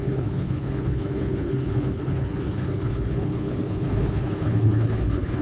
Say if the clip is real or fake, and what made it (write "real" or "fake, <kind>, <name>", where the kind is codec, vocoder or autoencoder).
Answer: fake, codec, HILCodec